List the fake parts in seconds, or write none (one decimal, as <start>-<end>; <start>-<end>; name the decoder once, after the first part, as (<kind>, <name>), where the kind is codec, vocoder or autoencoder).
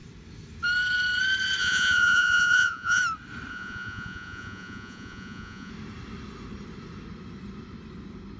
1.6-3.0 (vocoder, Vocos); 3.5-5.7